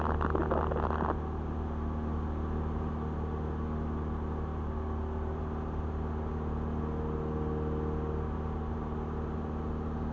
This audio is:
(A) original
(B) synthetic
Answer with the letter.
A